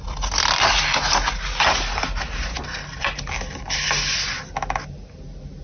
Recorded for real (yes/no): yes